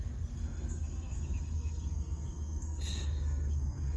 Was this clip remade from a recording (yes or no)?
yes